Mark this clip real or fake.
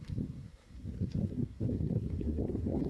fake